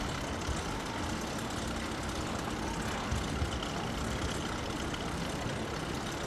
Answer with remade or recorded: recorded